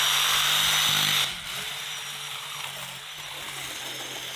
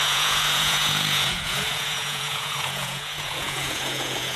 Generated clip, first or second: second